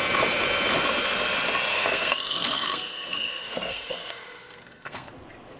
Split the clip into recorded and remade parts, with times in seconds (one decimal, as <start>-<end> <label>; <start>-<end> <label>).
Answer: 0.0-1.7 recorded; 1.7-5.1 remade; 5.1-5.6 recorded